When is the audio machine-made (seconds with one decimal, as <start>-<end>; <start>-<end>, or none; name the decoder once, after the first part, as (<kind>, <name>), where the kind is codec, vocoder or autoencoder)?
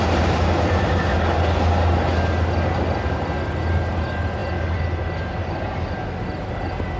none